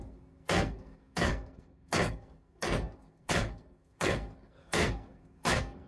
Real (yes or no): no